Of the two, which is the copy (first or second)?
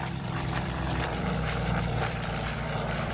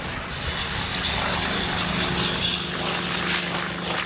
first